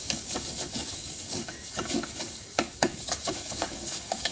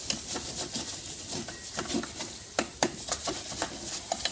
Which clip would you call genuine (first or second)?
second